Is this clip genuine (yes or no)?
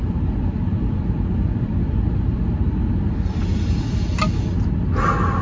yes